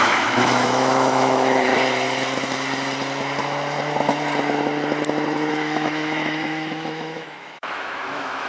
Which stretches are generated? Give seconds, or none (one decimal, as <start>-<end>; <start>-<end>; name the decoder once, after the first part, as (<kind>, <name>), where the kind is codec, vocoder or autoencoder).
0.0-1.7 (autoencoder, DAC-VAE); 5.5-8.5